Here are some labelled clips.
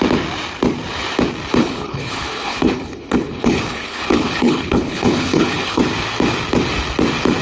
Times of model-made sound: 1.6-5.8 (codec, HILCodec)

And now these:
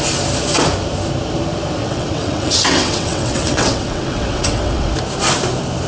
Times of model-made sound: 1.8-4.9 (vocoder, WaveNeXt)

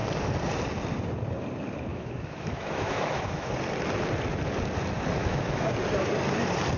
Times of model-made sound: 1.9-3.5 (autoencoder, DAC-VAE); 5.2-5.7

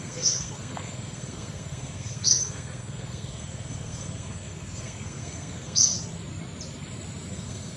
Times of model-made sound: 0.0-5.9 (codec, SNAC); 7.3-7.8

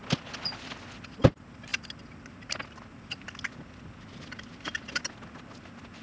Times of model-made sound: none

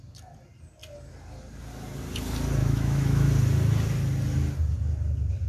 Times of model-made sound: 2.6-3.3 (autoencoder, DAC-VAE)

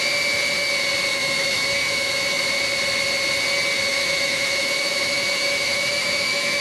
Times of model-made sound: 1.1-2.5 (autoencoder, DAC-VAE); 3.9-6.6